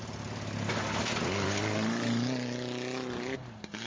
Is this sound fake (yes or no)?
no